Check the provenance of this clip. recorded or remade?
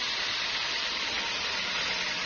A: recorded